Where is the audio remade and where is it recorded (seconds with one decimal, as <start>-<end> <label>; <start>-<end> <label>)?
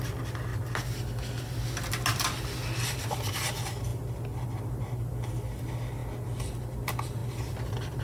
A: 0.0-8.0 recorded